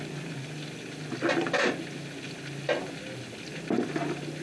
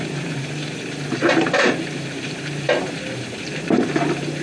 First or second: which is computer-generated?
second